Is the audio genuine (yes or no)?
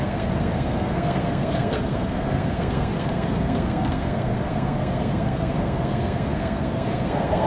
no